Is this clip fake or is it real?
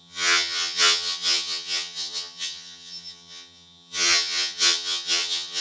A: fake